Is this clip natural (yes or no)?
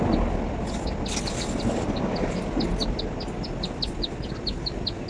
yes